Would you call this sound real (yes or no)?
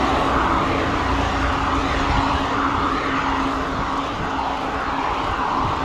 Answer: yes